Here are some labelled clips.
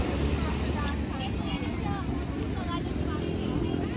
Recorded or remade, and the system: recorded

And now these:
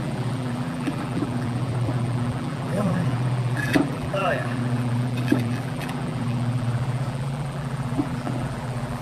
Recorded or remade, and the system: remade, vocoder, BigVGAN v2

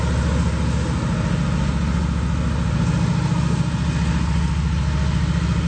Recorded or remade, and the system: recorded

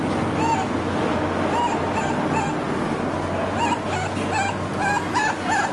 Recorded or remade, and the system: recorded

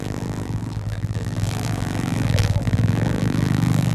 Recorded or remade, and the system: remade, vocoder, BigVGAN v2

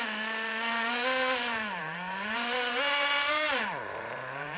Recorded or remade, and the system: remade, vocoder, BigVGAN v2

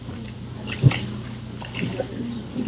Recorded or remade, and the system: recorded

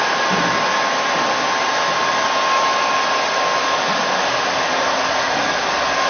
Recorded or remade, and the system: recorded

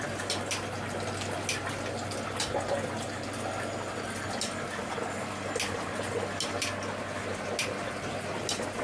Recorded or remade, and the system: recorded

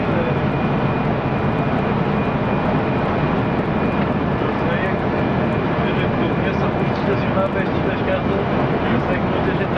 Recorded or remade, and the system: recorded